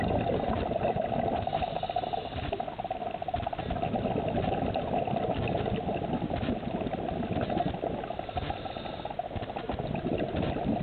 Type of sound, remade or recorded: recorded